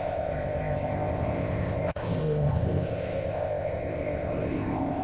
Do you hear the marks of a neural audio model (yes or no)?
yes